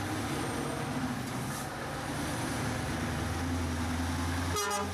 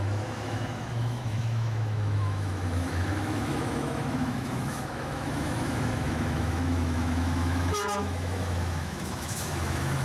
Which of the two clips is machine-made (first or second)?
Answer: second